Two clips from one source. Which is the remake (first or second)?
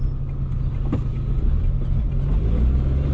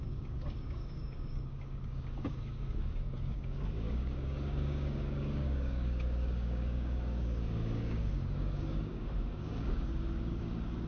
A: second